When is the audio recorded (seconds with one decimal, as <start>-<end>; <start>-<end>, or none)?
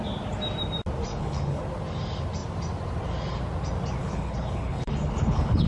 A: 0.0-1.1; 1.6-4.0